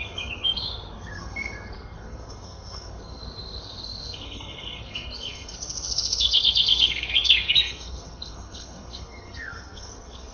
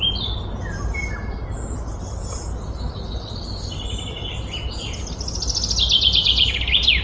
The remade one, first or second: first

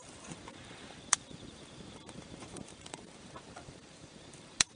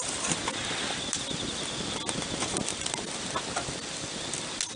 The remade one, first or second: first